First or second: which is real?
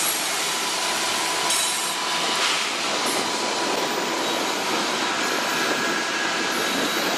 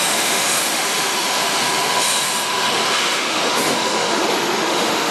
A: first